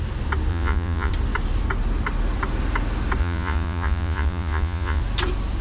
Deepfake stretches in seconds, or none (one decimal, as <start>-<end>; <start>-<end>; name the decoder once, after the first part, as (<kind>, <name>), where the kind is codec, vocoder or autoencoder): 0.5-1.1 (vocoder, Vocos); 3.2-5.0

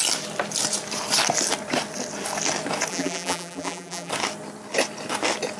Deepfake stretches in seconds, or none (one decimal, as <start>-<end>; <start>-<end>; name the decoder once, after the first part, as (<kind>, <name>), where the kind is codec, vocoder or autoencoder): 2.9-4.1 (vocoder, BigVGAN v2)

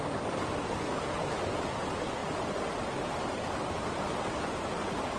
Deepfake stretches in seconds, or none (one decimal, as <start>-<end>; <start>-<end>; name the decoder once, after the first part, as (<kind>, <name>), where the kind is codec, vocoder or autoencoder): none

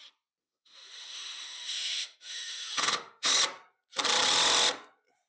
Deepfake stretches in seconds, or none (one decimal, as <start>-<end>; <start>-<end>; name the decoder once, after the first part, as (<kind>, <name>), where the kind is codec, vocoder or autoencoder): 0.4-3.3 (autoencoder, DAC-VAE)

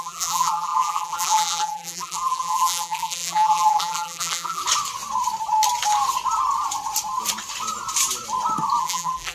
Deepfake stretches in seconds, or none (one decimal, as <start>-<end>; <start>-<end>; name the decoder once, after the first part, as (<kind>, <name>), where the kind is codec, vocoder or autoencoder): 0.0-4.6 (vocoder, BigVGAN v2); 8.8-9.3

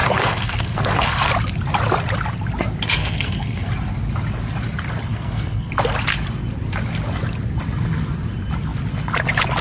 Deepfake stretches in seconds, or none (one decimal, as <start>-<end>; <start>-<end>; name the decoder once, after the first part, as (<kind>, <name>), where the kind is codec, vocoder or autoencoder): 0.0-1.3 (codec, SNAC); 3.0-3.7; 5.1-5.7

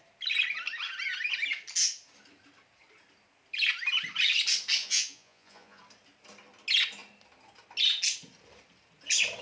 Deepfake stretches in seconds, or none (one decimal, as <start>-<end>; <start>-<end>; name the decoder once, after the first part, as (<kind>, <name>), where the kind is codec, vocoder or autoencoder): 4.8-5.8 (vocoder, Vocos)

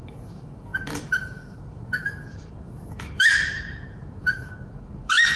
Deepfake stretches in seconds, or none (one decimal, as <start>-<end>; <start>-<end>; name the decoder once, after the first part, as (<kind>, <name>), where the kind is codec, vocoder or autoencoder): 0.0-5.4 (autoencoder, DAC-VAE)